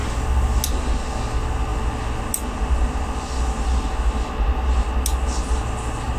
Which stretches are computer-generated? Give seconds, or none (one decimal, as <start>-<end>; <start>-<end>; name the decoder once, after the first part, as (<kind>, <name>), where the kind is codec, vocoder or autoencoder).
none